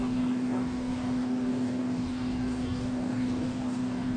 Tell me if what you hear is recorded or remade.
remade